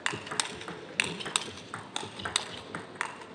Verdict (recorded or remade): recorded